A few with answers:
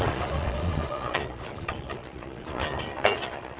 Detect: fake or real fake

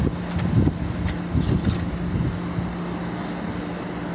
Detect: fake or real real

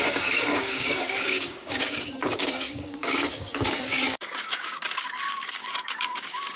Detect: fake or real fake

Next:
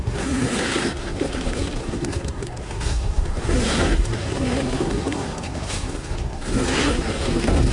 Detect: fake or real fake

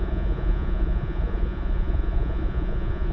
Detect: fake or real fake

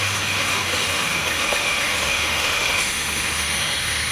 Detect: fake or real fake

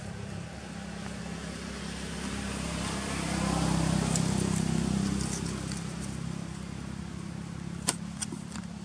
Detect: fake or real real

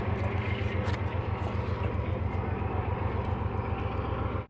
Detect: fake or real real